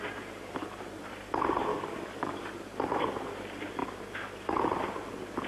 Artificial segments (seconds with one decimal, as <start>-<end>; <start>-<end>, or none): 1.7-2.5